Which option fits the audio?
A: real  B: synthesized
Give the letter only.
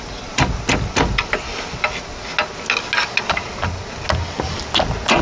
A